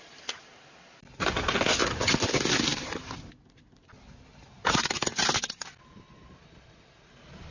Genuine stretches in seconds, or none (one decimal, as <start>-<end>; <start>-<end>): 0.0-7.5